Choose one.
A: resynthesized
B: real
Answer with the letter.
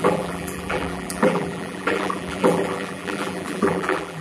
A